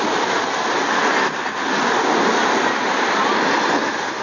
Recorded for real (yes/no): yes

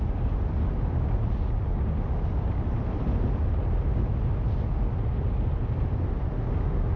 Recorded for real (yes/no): yes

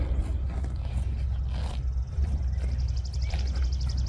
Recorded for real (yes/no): yes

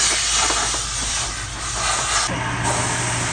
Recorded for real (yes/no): yes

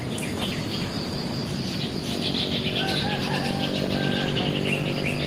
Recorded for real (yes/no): yes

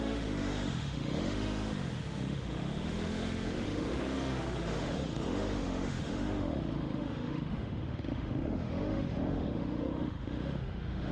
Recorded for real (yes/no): no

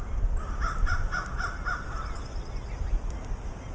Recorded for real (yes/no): yes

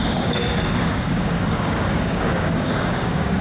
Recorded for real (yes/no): no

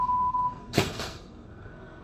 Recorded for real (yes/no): no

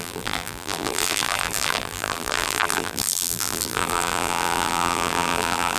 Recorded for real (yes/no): no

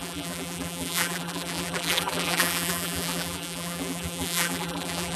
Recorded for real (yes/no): no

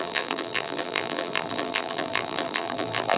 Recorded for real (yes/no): no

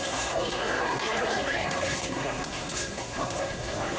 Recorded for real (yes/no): no